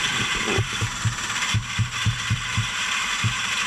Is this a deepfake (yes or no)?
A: yes